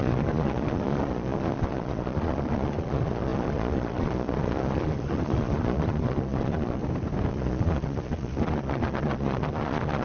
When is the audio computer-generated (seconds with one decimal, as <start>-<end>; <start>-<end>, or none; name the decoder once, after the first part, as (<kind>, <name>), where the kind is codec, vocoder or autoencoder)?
0.0-6.8 (vocoder, Vocos); 7.3-10.0